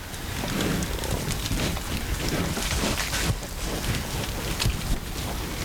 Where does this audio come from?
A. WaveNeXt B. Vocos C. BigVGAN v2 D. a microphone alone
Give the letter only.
D